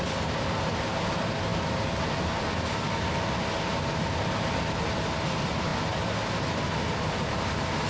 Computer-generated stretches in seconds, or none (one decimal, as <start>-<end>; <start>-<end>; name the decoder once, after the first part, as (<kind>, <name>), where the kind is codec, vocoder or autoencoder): none

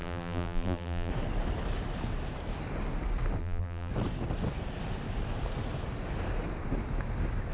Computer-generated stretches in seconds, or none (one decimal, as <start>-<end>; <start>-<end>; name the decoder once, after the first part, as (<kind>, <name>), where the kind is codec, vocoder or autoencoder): 0.0-1.1 (vocoder, BigVGAN v2); 3.4-3.9

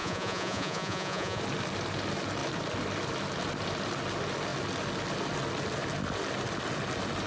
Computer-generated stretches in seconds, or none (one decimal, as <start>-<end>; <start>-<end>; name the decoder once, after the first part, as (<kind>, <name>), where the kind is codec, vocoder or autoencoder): 0.0-1.4 (vocoder, Vocos)

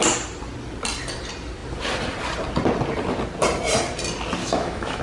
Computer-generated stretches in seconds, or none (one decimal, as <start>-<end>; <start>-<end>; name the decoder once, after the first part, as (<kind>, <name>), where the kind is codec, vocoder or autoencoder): 4.4-5.0 (autoencoder, DAC-VAE)

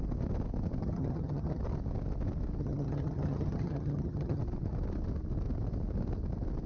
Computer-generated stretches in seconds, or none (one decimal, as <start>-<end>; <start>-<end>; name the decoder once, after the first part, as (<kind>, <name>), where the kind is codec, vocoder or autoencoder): 0.8-1.6 (vocoder, HiFi-GAN); 2.6-4.4